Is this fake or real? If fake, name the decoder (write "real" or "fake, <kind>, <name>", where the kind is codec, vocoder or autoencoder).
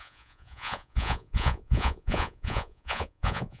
fake, vocoder, Vocos